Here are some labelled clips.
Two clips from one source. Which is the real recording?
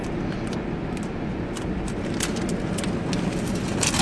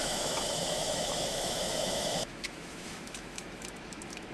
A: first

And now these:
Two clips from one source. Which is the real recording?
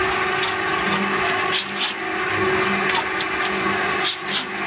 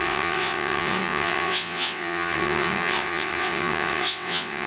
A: first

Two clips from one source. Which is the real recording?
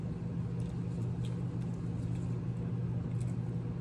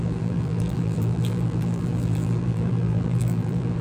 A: first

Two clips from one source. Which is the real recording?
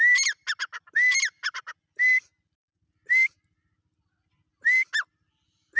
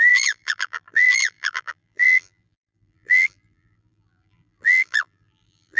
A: first